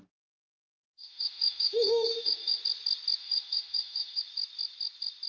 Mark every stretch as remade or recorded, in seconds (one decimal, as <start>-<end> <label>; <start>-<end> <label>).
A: 0.0-0.8 recorded; 0.8-2.6 remade; 2.6-3.2 recorded; 3.2-4.2 remade; 4.2-5.3 recorded